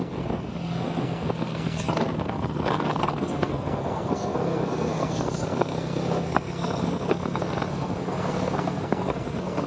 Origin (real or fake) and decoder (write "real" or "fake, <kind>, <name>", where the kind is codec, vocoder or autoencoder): fake, codec, SNAC